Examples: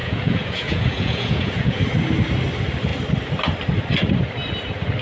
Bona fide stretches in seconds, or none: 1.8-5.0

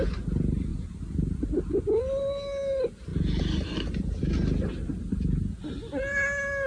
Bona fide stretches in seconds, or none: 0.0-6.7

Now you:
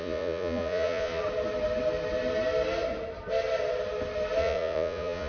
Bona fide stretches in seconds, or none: 1.2-4.4

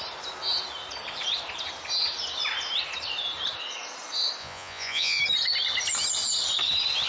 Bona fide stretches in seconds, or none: 0.0-4.4; 5.2-7.1